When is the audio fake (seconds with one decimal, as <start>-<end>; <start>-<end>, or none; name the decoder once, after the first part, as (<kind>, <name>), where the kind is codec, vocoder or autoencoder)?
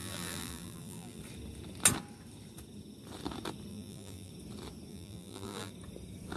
0.0-1.2 (vocoder, BigVGAN v2); 3.7-4.3; 4.9-5.7